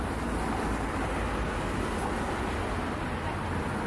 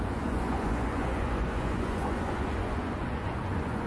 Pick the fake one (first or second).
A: second